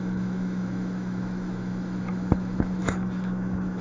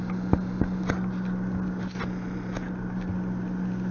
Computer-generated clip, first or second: first